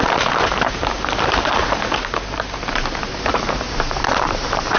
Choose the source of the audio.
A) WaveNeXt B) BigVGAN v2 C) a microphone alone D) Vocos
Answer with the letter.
B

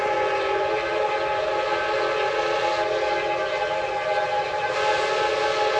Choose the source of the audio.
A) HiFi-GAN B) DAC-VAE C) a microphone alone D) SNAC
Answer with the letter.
C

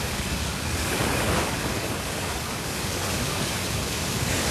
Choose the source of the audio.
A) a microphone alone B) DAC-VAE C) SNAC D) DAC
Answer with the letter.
D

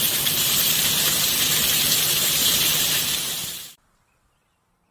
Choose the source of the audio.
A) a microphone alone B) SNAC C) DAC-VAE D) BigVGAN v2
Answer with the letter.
D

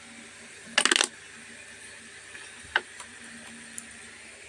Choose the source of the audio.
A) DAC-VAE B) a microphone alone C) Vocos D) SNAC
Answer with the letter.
B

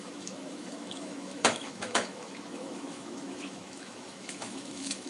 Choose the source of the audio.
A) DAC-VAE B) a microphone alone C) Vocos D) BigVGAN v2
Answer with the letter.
A